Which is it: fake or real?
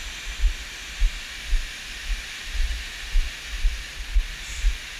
real